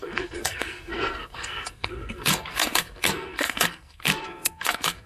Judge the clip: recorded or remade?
remade